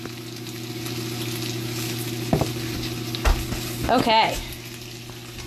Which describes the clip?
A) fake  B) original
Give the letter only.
B